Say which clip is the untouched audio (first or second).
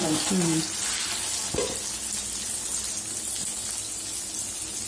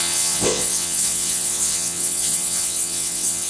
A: first